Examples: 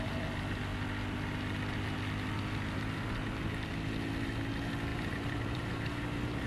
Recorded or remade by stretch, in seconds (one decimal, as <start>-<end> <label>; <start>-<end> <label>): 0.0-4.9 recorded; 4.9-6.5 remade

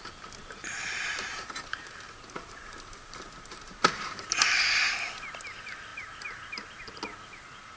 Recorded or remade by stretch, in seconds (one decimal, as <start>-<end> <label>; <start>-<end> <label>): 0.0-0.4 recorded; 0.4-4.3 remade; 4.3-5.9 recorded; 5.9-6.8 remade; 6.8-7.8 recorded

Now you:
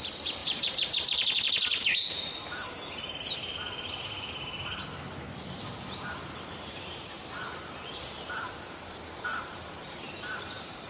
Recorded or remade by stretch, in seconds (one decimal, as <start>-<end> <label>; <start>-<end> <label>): 0.0-4.8 remade; 4.8-6.7 recorded; 6.7-7.2 remade; 7.2-9.4 recorded; 9.4-10.9 remade

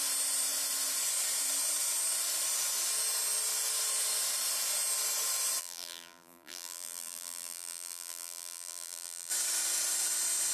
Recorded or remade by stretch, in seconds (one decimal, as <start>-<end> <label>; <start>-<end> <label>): 0.0-5.6 recorded; 5.6-9.3 remade; 9.3-10.5 recorded

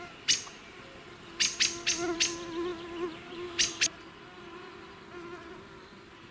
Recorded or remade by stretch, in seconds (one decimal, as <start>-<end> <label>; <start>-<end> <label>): 0.0-6.3 recorded